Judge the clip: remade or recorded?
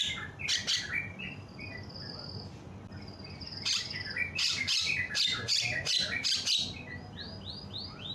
recorded